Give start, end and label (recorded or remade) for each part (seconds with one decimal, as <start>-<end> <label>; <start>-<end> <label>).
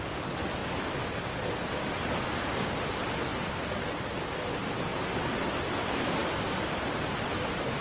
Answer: 0.0-0.6 recorded; 0.6-1.3 remade; 1.3-3.3 recorded; 3.3-4.1 remade; 4.1-6.2 recorded; 6.2-6.8 remade; 6.8-7.8 recorded